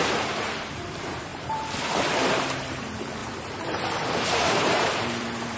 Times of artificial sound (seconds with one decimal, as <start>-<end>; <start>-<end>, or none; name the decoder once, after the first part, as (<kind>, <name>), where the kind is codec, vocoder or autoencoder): 0.0-5.6 (vocoder, BigVGAN v2)